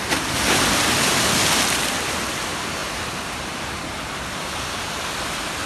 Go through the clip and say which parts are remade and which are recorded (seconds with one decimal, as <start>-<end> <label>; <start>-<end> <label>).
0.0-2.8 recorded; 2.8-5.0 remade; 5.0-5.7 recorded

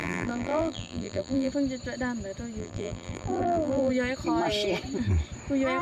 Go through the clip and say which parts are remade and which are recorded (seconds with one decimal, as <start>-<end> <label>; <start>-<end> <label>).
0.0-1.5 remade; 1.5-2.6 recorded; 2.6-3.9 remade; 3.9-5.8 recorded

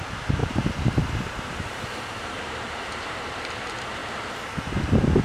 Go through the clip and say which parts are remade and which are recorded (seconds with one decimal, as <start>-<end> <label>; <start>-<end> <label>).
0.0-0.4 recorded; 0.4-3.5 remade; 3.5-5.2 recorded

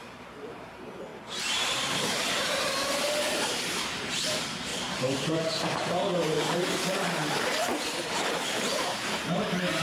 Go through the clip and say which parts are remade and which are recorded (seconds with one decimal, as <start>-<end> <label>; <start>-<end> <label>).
0.0-9.8 remade

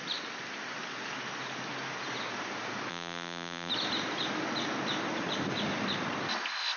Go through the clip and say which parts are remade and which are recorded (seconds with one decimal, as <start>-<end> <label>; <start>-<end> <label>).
0.0-2.9 recorded; 2.9-3.7 remade; 3.7-6.8 recorded

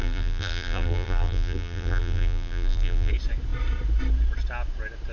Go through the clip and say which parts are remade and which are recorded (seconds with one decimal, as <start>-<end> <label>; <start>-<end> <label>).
0.0-3.1 remade; 3.1-5.1 recorded

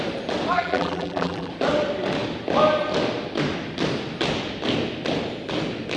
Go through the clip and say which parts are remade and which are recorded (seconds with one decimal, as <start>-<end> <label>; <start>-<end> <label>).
0.0-0.5 recorded; 0.5-1.5 remade; 1.5-6.0 recorded